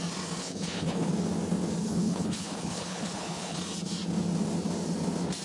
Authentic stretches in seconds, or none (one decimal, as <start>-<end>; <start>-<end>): 0.0-0.4; 1.1-1.8; 3.6-5.4